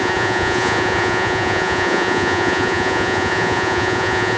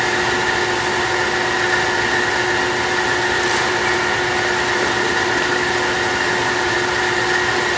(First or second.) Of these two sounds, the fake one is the first